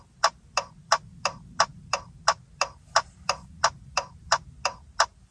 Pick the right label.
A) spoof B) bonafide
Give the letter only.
B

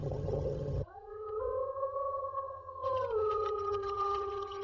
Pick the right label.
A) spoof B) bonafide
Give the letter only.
A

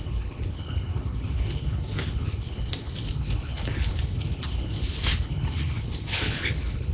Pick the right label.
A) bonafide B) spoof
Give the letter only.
B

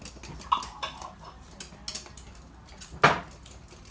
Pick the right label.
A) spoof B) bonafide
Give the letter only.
B